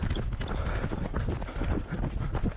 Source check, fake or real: real